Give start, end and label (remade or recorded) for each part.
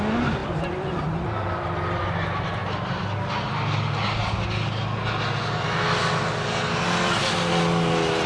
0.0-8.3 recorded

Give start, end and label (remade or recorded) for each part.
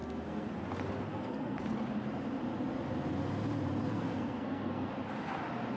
0.0-0.5 remade; 0.5-1.1 recorded; 1.1-1.6 remade; 1.6-3.8 recorded; 3.8-4.9 remade; 4.9-5.8 recorded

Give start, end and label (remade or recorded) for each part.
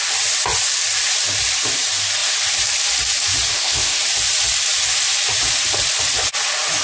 0.0-3.5 recorded; 3.5-4.0 remade; 4.0-6.8 recorded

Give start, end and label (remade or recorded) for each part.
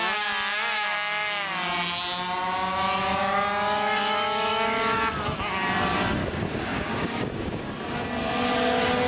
0.0-3.2 recorded; 3.2-5.0 remade; 5.0-6.2 recorded; 6.2-7.7 remade; 7.7-9.1 recorded